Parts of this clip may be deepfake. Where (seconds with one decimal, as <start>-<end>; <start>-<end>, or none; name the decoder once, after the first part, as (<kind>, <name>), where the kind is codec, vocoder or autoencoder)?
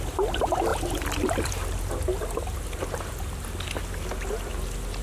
none